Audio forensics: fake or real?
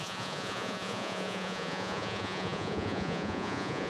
fake